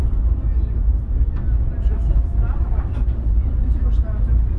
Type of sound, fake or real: real